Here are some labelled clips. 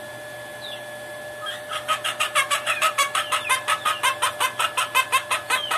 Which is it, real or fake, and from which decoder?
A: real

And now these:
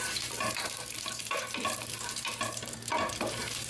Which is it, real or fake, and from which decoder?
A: fake, vocoder, BigVGAN v2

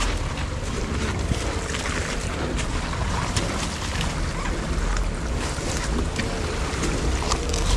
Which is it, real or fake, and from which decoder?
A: real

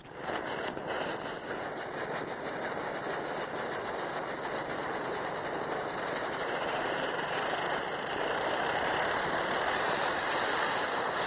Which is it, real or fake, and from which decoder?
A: fake, vocoder, BigVGAN v2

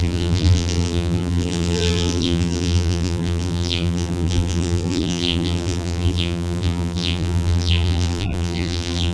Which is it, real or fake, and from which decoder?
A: fake, vocoder, BigVGAN v2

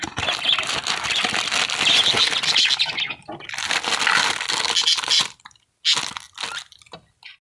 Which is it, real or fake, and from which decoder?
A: real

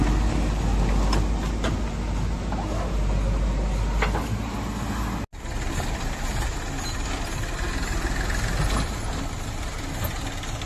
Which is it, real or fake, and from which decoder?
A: real